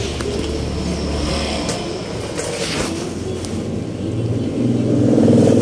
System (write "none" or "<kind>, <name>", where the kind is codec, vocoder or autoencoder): none